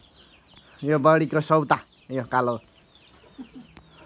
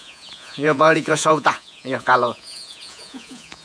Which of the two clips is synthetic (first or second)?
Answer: second